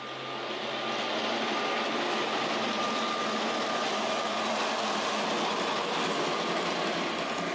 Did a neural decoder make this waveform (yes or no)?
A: no